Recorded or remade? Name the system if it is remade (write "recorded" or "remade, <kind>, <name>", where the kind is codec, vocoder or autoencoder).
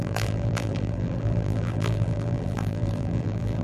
remade, vocoder, BigVGAN v2